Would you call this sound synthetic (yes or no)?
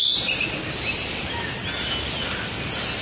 no